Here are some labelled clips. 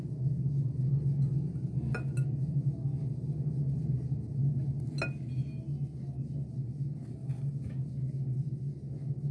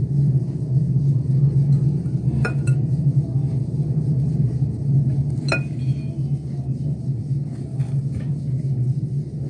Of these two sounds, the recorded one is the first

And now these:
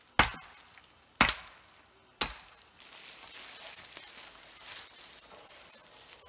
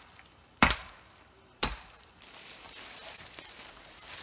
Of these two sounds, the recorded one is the first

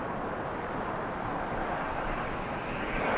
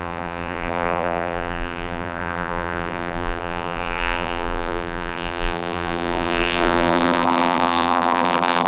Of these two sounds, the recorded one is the first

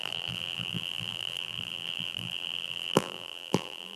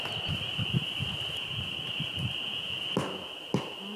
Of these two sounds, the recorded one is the second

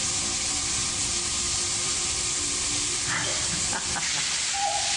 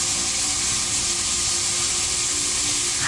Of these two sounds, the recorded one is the second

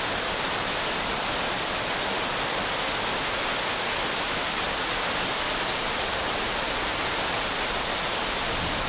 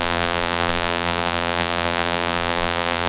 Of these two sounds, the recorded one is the first